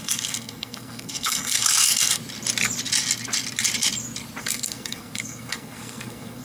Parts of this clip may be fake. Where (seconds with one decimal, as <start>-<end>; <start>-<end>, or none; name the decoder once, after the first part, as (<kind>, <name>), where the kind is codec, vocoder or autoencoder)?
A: 0.0-2.2 (codec, SNAC); 4.4-6.4